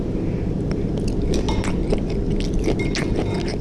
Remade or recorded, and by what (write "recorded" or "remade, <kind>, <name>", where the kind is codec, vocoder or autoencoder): recorded